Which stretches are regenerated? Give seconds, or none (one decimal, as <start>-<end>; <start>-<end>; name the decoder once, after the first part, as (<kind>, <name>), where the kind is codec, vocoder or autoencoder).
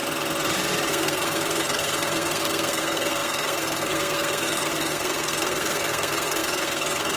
0.9-7.2 (codec, SNAC)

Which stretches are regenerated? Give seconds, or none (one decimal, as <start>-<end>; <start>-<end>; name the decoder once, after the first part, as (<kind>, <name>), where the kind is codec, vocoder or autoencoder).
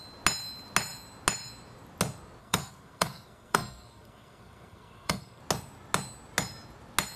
2.4-5.4 (codec, SNAC)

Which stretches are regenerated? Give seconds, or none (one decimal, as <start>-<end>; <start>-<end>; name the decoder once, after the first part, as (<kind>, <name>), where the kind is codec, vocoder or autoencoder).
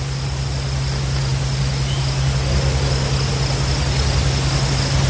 none